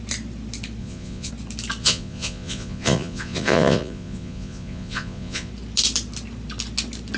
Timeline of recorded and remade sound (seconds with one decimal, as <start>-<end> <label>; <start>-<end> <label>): 0.0-0.8 recorded; 0.8-1.3 remade; 1.3-1.8 recorded; 1.8-5.5 remade; 5.5-7.2 recorded